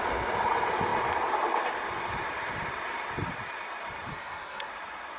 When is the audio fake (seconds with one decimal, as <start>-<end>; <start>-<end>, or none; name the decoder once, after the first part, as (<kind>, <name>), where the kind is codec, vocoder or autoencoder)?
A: 4.1-4.7 (codec, SNAC)